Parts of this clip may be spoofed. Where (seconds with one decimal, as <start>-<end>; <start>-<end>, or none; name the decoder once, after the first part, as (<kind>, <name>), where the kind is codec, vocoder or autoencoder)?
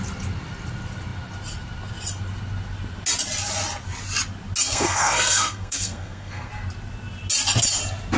4.7-6.5 (codec, SNAC)